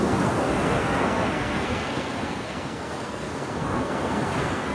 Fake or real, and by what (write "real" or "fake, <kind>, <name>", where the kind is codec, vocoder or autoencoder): fake, codec, SNAC